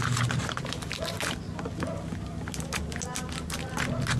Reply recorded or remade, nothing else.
recorded